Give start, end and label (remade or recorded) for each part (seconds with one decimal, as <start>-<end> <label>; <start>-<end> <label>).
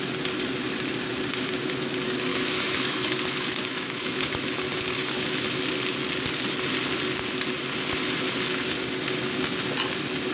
0.0-2.3 recorded; 2.3-4.8 remade; 4.8-10.3 recorded